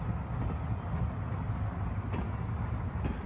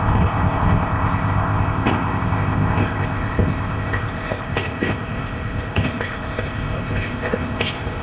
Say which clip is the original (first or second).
first